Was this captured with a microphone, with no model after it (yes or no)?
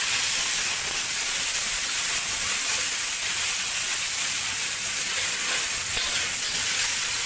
no